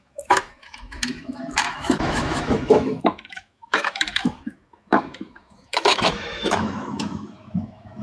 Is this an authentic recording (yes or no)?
no